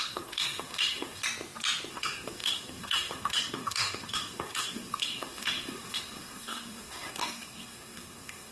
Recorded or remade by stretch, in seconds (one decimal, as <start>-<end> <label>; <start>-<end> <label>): 0.0-1.2 remade; 1.2-1.9 recorded; 1.9-8.5 remade